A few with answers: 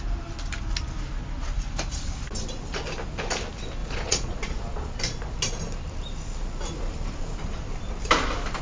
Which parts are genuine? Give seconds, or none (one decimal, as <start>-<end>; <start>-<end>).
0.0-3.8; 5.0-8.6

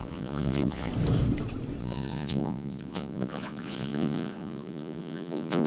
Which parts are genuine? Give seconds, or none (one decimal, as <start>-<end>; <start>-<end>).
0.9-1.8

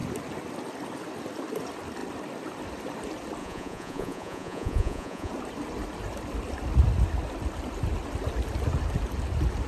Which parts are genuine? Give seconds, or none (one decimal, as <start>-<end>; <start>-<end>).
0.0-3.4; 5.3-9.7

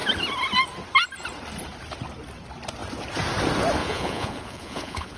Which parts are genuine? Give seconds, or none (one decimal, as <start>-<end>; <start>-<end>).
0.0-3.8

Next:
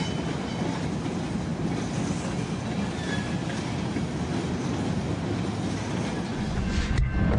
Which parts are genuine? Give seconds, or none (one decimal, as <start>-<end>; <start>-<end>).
0.0-6.3; 7.0-7.4